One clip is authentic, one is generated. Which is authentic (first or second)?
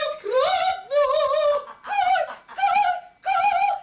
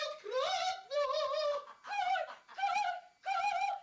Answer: first